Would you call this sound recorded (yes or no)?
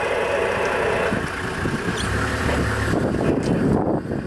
yes